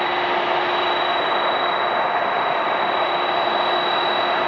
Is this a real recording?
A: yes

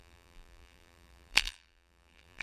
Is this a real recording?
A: no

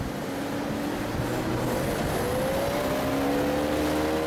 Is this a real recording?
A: yes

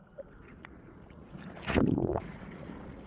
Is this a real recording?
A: no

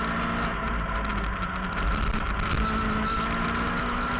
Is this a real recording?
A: yes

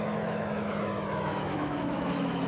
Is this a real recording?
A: no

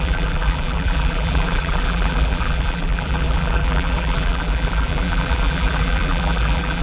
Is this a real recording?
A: no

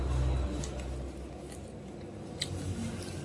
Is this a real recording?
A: yes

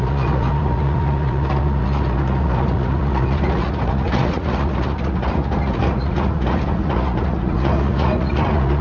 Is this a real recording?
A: no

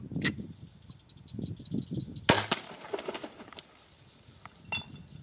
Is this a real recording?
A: yes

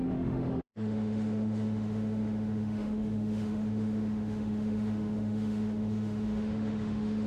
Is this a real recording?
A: no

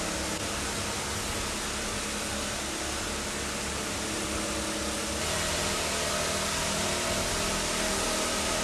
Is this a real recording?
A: yes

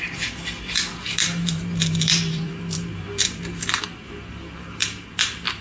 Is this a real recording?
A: no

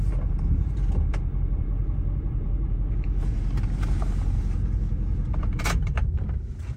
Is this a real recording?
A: no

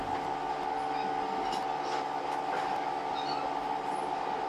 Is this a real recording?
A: yes